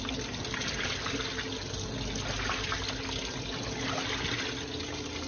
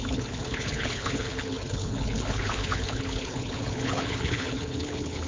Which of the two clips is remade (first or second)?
second